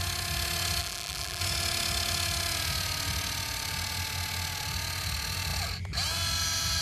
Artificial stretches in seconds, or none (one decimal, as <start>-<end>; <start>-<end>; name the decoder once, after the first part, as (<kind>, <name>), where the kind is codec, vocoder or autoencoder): 0.8-1.4 (vocoder, BigVGAN v2)